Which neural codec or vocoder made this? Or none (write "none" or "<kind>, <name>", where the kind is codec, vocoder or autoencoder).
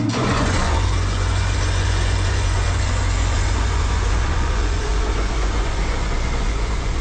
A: vocoder, Vocos